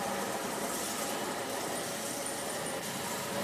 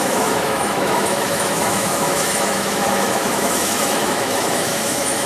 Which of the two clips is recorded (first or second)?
first